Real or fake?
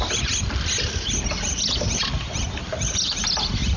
real